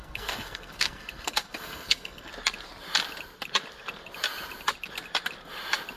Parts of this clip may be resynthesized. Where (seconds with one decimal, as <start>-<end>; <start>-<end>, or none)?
0.0-2.3